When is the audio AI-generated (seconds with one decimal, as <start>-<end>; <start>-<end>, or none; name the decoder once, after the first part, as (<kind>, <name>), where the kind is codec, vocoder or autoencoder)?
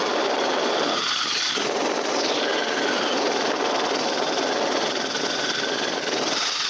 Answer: none